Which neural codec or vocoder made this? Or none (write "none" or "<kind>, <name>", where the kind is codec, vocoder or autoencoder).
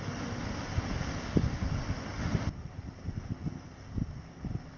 none